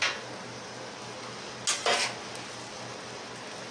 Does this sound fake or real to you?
real